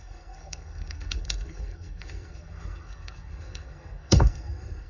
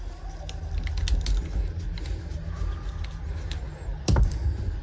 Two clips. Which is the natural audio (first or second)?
second